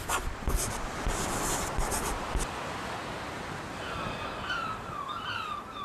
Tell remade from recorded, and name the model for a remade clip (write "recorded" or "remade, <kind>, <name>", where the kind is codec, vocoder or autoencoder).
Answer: remade, vocoder, BigVGAN v2